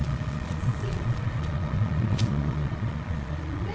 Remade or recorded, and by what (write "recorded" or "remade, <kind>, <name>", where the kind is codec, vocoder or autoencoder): remade, vocoder, Vocos